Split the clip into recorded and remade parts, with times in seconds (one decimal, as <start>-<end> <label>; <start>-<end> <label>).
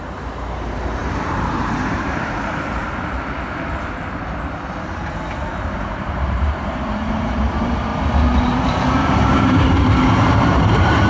0.0-2.8 remade; 2.8-5.5 recorded; 5.5-7.9 remade; 7.9-8.4 recorded; 8.4-11.1 remade